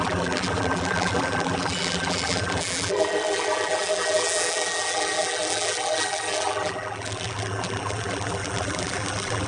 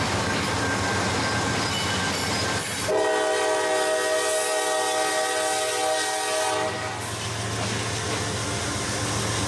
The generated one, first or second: first